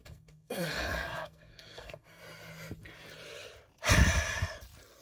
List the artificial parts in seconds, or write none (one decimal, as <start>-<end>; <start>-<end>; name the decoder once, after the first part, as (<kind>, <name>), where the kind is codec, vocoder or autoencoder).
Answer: 0.0-2.2 (codec, SNAC)